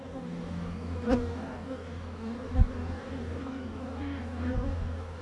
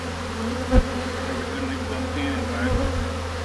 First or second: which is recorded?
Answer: second